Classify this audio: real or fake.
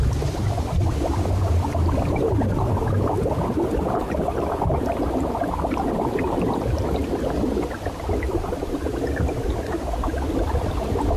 real